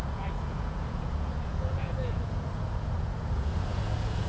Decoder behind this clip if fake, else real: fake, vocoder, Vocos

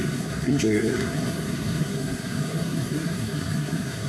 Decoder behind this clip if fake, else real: fake, codec, SNAC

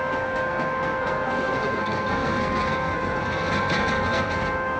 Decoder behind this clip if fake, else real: fake, codec, SNAC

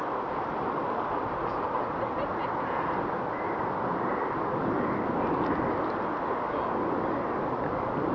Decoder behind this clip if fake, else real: real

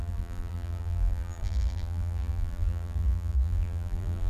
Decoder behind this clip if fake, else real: fake, vocoder, BigVGAN v2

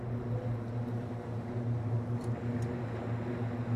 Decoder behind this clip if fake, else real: real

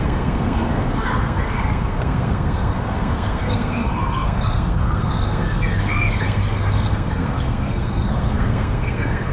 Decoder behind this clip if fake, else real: fake, codec, SNAC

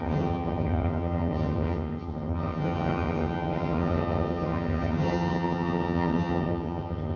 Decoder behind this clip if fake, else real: fake, vocoder, HiFi-GAN